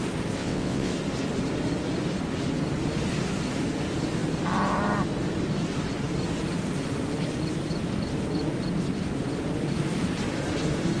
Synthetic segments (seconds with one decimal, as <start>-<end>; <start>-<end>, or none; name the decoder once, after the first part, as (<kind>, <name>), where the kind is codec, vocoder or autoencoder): 0.4-0.9 (vocoder, WaveNeXt)